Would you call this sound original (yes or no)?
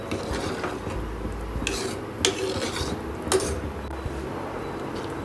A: yes